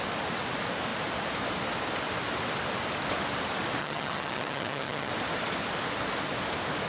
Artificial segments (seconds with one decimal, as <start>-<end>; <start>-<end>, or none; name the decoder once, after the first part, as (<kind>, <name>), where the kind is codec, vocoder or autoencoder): 3.8-5.1 (vocoder, HiFi-GAN)